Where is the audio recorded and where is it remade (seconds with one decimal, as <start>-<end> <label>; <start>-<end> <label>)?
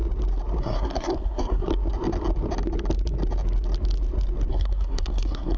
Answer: 0.0-0.6 recorded; 0.6-1.7 remade; 1.7-4.5 recorded; 4.5-5.6 remade